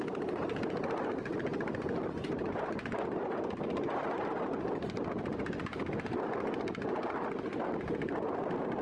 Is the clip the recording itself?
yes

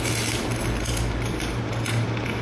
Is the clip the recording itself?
yes